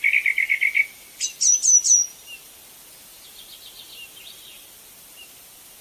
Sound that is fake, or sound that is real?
real